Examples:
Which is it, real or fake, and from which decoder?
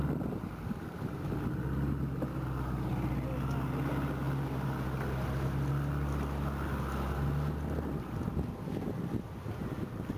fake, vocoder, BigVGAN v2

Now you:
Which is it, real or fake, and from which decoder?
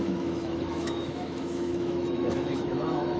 fake, autoencoder, DAC-VAE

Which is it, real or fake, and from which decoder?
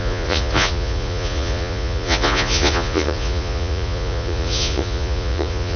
fake, vocoder, Vocos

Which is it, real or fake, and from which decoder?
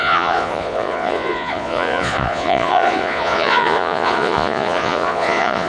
fake, vocoder, Vocos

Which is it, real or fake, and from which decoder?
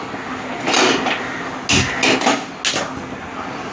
real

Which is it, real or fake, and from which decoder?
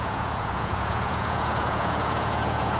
fake, vocoder, Vocos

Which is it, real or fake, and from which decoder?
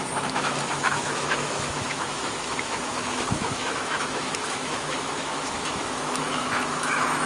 fake, autoencoder, DAC-VAE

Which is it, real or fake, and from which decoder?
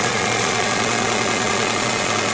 fake, vocoder, Vocos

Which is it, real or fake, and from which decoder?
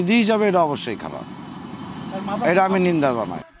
fake, vocoder, BigVGAN v2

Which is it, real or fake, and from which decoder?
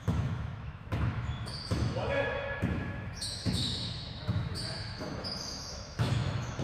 fake, autoencoder, DAC-VAE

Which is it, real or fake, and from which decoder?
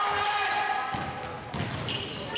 real